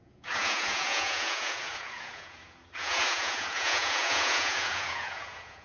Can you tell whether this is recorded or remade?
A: remade